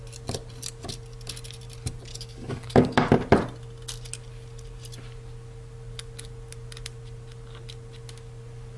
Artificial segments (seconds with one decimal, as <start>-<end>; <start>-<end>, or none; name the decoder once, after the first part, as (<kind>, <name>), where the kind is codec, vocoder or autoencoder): 2.1-3.1 (codec, DAC)